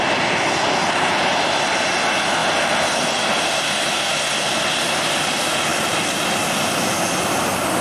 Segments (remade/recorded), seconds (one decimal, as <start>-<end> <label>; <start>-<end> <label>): 0.0-5.7 recorded; 5.7-6.7 remade; 6.7-7.8 recorded